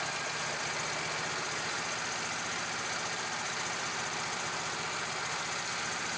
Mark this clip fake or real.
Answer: real